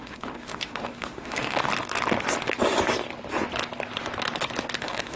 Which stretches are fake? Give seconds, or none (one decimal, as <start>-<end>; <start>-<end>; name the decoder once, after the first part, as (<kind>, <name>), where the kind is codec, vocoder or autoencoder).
0.0-1.7 (autoencoder, DAC-VAE); 4.8-5.2